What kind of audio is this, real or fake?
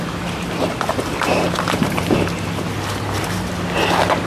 real